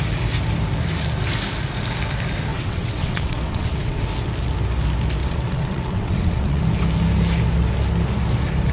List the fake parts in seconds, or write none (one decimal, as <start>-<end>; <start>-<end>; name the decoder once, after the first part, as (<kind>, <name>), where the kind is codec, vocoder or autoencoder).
2.5-4.0 (vocoder, WaveNeXt); 5.2-6.6